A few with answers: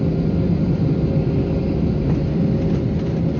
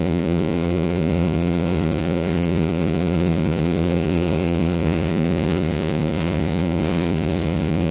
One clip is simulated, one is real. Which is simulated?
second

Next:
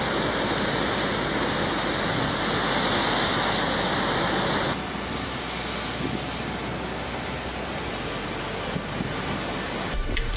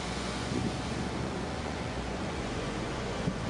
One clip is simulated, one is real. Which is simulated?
second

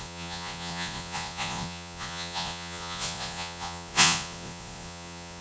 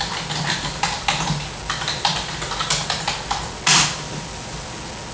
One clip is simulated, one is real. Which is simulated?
first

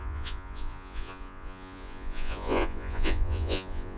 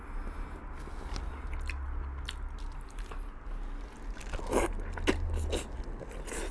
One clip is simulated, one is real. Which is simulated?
first